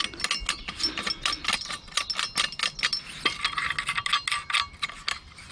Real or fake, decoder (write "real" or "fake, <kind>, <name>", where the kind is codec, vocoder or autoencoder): real